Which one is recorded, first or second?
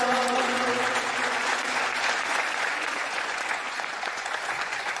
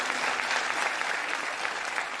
second